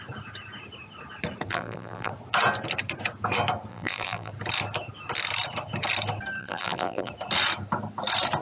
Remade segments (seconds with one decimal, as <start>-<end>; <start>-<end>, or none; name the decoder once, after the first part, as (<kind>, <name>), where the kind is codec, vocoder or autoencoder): 1.5-2.1 (vocoder, BigVGAN v2); 3.7-4.3; 6.4-7.1